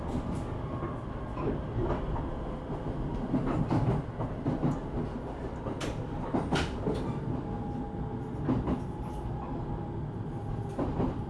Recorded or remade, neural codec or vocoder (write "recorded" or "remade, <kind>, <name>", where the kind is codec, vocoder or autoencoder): recorded